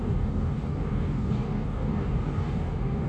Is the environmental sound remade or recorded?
remade